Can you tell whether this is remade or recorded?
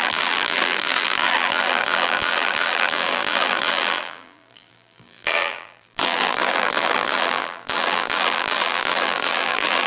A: remade